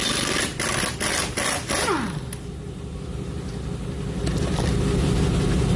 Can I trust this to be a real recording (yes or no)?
yes